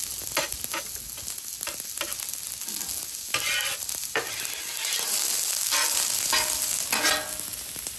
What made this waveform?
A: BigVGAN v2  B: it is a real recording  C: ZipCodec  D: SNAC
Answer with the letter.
B